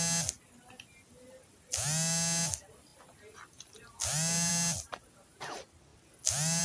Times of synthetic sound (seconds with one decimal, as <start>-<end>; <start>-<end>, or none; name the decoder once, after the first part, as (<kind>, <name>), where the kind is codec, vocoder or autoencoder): none